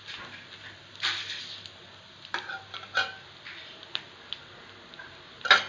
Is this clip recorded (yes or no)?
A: yes